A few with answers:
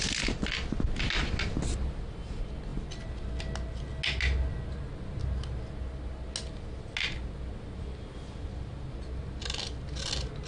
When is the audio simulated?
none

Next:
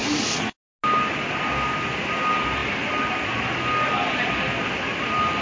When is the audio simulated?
none

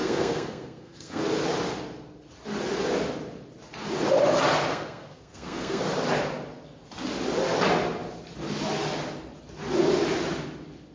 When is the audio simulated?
0.0-1.2 (codec, SNAC); 4.7-5.8